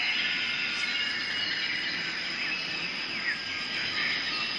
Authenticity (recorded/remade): recorded